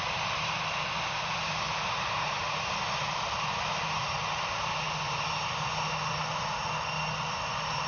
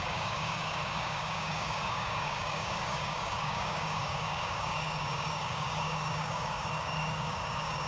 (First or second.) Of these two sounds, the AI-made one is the second